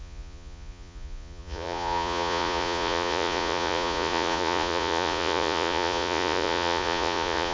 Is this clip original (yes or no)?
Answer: no